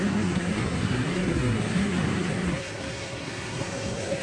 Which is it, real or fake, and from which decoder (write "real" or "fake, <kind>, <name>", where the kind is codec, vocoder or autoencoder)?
fake, codec, SNAC